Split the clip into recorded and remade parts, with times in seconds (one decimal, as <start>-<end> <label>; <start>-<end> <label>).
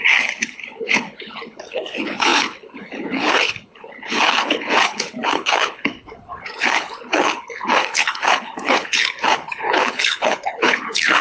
0.0-11.2 remade